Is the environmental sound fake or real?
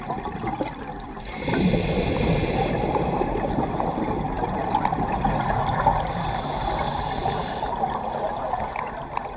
real